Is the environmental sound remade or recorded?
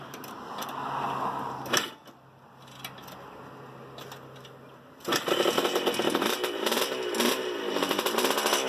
recorded